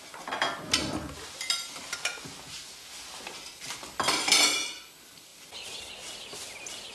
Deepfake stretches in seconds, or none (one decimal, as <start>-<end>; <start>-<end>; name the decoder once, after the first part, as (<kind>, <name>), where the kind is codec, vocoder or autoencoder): none